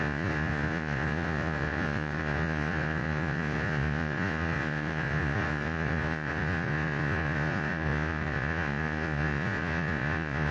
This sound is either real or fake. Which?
fake